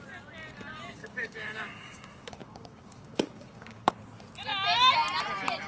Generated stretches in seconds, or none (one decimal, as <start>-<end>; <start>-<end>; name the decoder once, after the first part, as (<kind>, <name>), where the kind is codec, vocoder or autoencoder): 1.0-3.9 (codec, DAC)